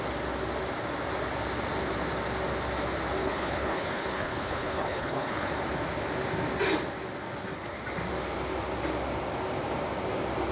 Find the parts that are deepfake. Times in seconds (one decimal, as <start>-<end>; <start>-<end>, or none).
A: 3.2-5.5